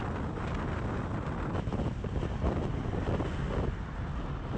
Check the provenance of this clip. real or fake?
real